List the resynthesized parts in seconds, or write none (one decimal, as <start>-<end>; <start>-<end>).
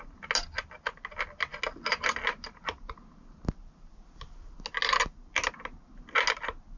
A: none